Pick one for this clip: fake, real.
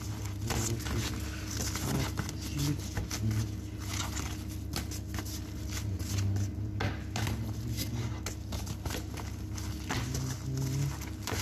real